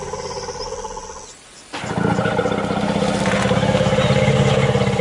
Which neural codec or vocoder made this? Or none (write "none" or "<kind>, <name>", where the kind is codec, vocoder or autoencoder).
none